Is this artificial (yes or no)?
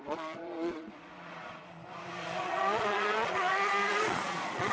yes